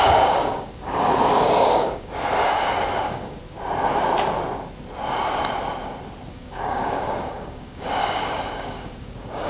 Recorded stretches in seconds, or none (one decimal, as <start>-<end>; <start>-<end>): 3.4-6.3